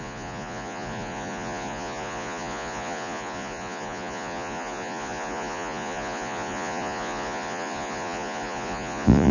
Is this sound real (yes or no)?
no